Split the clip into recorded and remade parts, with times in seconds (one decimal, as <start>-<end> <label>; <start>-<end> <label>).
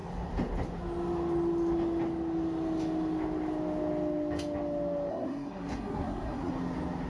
0.0-5.1 recorded; 5.1-6.5 remade; 6.5-7.1 recorded